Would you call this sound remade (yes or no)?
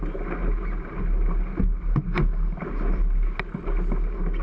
no